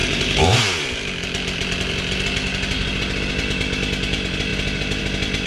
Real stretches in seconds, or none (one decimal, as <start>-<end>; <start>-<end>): 0.6-5.5